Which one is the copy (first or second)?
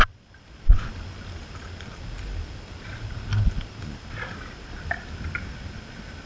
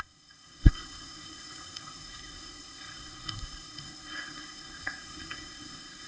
second